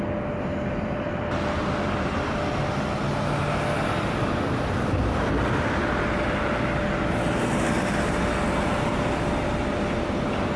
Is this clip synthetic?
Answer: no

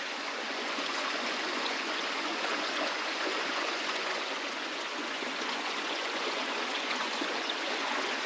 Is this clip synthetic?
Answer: yes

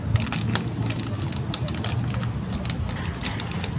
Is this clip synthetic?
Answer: no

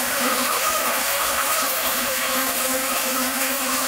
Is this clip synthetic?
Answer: yes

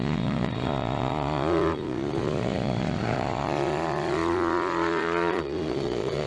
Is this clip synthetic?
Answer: yes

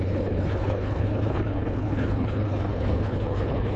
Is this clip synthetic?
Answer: yes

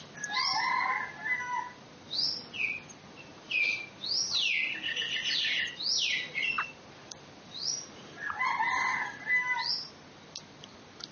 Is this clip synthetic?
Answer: no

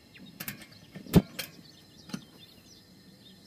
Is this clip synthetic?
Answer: no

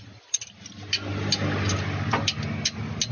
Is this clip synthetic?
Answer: no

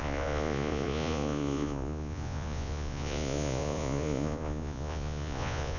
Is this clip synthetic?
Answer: yes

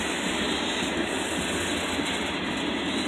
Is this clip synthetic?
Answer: no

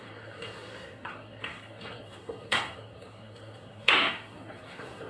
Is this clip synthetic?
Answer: yes